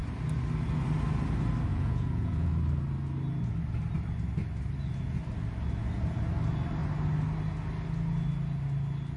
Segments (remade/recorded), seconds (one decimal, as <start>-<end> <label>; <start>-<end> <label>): 0.0-1.7 recorded; 1.7-2.5 remade; 2.5-9.2 recorded